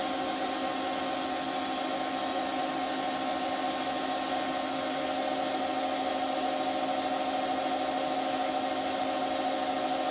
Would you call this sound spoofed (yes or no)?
no